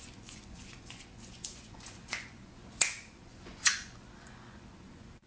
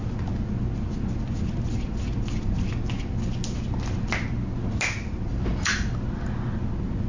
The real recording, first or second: second